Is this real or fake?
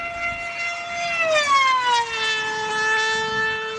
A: real